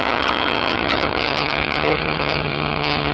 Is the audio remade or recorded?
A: remade